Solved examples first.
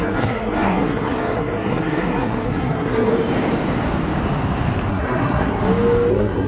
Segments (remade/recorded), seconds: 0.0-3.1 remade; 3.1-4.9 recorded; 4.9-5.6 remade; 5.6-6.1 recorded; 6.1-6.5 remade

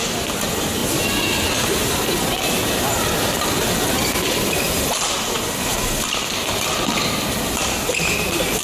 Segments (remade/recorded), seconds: 0.0-0.8 remade; 0.8-1.5 recorded; 1.5-8.6 remade

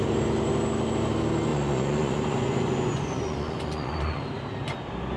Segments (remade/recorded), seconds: 0.0-1.5 recorded; 1.5-4.2 remade; 4.2-5.2 recorded

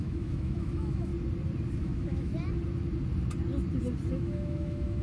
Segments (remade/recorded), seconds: 0.0-1.1 remade; 1.1-1.8 recorded; 1.8-2.3 remade; 2.3-4.1 recorded; 4.1-5.0 remade

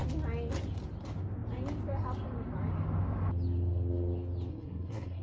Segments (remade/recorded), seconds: 0.0-4.5 recorded; 4.5-5.2 remade

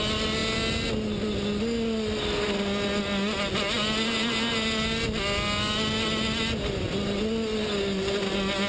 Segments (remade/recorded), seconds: 0.0-8.7 recorded